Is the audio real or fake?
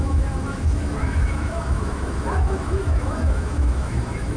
fake